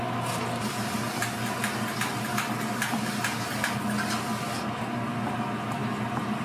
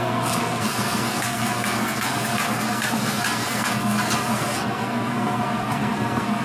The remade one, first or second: second